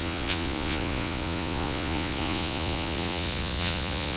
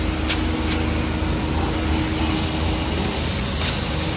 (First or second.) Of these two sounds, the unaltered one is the second